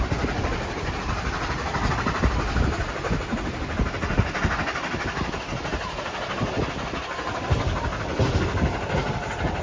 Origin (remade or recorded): recorded